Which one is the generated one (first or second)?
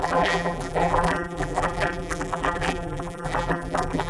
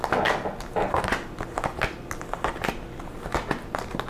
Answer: first